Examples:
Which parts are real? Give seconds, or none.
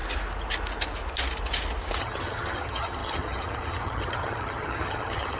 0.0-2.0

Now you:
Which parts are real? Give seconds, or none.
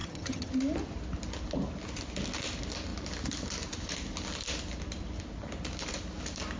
0.5-6.6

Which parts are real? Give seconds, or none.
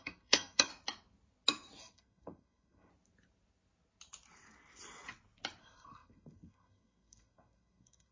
0.7-1.8; 2.9-5.6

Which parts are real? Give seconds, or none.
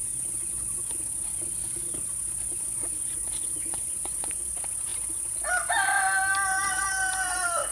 1.0-2.5; 4.5-7.7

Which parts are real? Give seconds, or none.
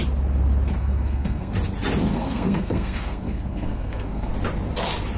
0.0-0.8; 1.5-2.1; 4.3-5.2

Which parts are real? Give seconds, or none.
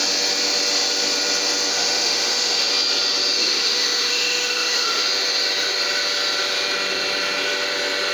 0.0-1.7; 2.7-3.4; 5.0-8.1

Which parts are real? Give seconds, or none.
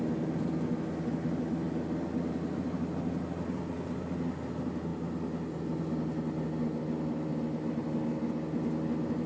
0.0-9.3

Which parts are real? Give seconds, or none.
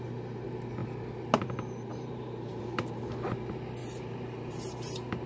0.0-1.9; 3.1-3.8